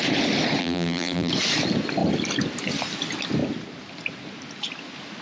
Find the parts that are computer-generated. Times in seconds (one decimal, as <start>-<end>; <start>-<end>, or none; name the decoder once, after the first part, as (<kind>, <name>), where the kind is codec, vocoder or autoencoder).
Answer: 0.6-1.3 (vocoder, BigVGAN v2)

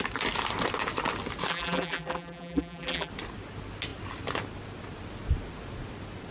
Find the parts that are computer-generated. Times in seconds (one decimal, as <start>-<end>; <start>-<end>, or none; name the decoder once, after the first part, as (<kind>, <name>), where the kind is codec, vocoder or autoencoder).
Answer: 1.5-3.1 (vocoder, BigVGAN v2)

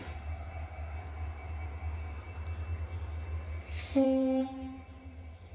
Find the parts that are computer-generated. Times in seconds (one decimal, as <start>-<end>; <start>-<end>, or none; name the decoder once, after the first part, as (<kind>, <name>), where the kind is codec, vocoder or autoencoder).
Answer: 0.0-0.8 (vocoder, BigVGAN v2); 3.9-5.5

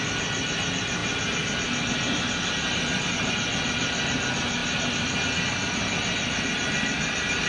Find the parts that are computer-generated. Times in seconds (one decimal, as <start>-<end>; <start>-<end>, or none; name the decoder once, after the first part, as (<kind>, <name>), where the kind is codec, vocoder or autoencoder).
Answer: none

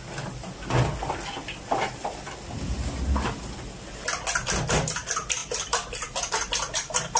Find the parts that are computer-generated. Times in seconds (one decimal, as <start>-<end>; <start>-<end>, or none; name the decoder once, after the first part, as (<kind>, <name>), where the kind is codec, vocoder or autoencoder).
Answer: none